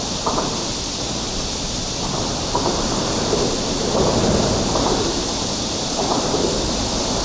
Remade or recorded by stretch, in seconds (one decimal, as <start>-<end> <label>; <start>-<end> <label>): 0.0-1.3 recorded; 1.3-5.3 remade; 5.3-7.2 recorded